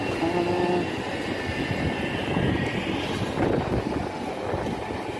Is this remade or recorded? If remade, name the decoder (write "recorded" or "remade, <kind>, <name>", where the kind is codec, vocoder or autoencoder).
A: recorded